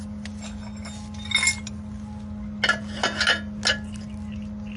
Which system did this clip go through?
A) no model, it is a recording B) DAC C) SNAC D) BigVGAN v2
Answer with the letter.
A